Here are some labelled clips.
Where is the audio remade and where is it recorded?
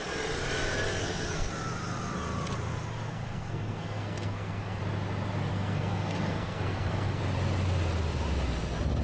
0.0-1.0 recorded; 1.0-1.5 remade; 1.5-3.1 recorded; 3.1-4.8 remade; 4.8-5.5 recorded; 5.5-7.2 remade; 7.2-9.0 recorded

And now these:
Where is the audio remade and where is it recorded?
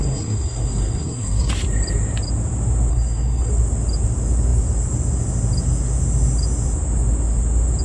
0.0-1.5 remade; 1.5-2.9 recorded; 2.9-3.5 remade; 3.5-7.8 recorded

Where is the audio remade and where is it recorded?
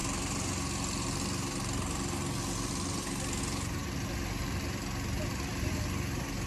0.0-6.5 recorded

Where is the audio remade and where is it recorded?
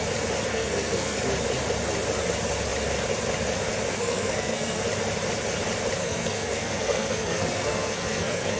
0.0-0.5 recorded; 0.5-1.2 remade; 1.2-3.9 recorded; 3.9-4.8 remade; 4.8-6.0 recorded; 6.0-8.6 remade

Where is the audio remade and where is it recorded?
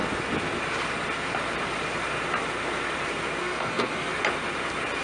0.0-3.4 recorded; 3.4-4.1 remade; 4.1-5.0 recorded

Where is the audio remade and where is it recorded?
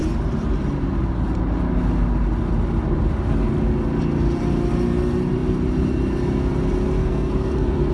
0.0-7.0 recorded; 7.0-7.9 remade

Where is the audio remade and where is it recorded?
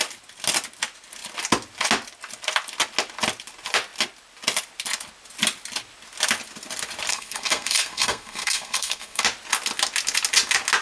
0.0-7.1 recorded; 7.1-9.2 remade; 9.2-10.8 recorded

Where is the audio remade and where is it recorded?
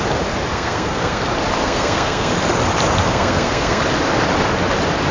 0.0-0.5 recorded; 0.5-1.2 remade; 1.2-1.6 recorded; 1.6-2.3 remade; 2.3-3.0 recorded; 3.0-3.8 remade; 3.8-5.1 recorded